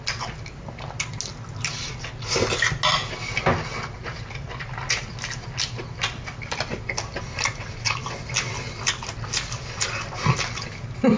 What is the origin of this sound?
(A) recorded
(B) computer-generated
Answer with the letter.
A